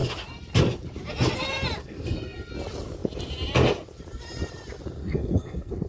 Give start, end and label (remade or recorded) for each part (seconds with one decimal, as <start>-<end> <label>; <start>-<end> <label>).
0.0-1.8 recorded; 1.8-2.5 remade; 2.5-5.0 recorded; 5.0-5.9 remade